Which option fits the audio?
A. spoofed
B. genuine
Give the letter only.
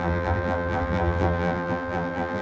A